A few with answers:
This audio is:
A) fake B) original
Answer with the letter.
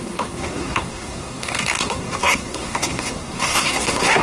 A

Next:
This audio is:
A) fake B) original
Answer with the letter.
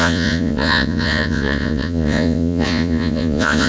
A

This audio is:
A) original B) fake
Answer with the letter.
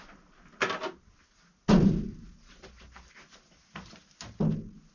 A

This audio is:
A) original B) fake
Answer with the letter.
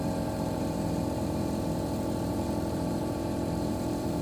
B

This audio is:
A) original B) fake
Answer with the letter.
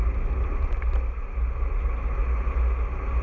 A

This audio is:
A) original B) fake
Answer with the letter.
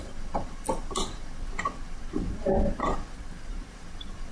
B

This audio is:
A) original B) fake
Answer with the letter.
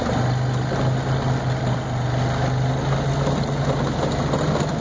A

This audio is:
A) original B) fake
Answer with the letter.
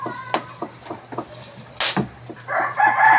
A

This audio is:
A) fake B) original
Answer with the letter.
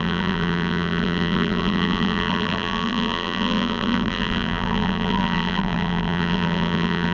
A